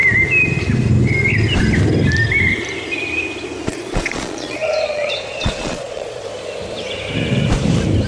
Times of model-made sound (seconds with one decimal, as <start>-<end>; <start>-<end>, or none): 3.7-6.2